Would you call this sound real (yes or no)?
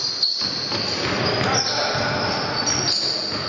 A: yes